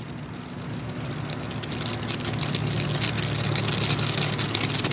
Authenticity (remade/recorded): recorded